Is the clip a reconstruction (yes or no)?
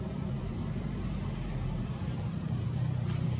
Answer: yes